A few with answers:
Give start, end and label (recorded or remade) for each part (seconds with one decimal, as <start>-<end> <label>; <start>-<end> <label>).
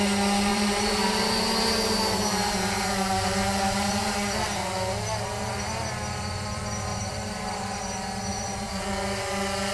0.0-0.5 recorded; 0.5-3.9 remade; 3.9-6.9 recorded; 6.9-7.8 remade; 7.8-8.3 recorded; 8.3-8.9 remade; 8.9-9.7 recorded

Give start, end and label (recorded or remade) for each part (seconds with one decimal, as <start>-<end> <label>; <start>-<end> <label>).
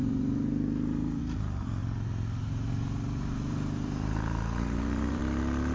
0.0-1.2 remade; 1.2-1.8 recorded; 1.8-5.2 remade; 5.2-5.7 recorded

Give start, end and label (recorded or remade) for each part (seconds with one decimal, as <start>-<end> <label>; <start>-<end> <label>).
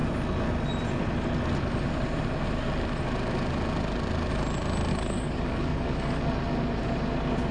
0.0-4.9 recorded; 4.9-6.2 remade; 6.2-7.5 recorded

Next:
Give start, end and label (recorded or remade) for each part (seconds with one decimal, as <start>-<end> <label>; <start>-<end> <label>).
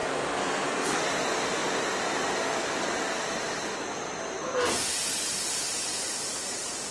0.0-1.0 remade; 1.0-6.9 recorded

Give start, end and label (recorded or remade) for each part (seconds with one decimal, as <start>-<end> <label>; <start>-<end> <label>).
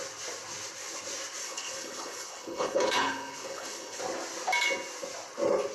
0.0-1.4 recorded; 1.4-4.0 remade; 4.0-5.7 recorded